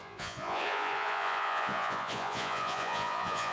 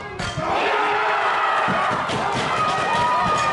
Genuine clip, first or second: second